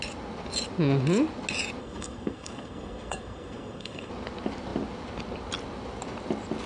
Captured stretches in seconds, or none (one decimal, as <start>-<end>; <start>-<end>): 0.0-1.8; 4.1-6.7